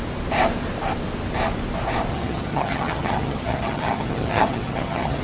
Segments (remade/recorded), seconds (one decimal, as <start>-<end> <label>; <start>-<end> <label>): 0.0-2.1 recorded; 2.1-5.2 remade